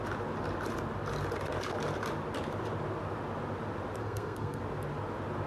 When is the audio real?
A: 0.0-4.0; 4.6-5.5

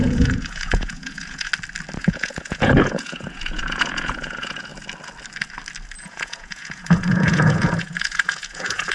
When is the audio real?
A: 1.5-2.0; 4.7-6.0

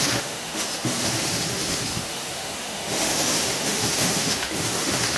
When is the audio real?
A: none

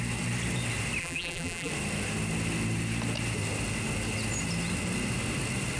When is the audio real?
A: 0.0-1.0; 1.7-5.8